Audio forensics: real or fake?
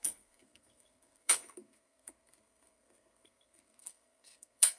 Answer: fake